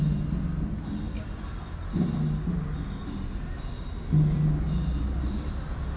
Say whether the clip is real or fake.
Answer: real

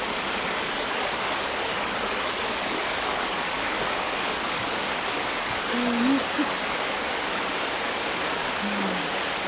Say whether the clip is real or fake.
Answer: fake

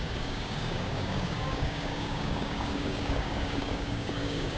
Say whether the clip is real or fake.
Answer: fake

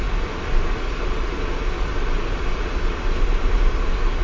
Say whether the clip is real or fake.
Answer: real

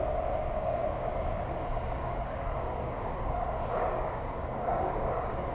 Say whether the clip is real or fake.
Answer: fake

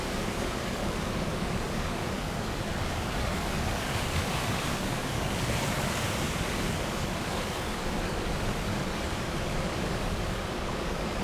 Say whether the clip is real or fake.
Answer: fake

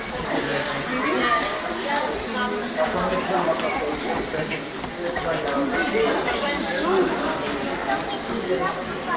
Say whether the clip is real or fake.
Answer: real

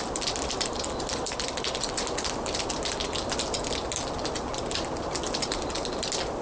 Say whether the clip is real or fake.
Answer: real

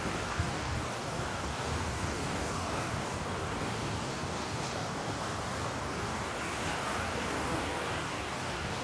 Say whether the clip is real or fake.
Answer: fake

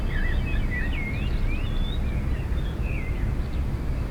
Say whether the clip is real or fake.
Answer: real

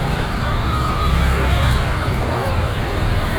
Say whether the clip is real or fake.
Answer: fake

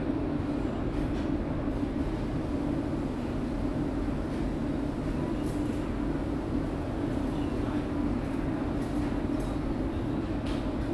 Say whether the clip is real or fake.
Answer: real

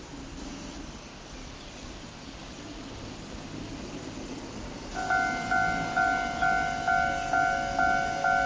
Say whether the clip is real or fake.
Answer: real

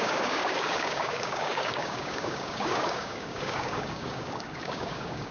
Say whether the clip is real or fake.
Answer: fake